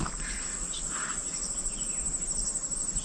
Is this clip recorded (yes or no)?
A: yes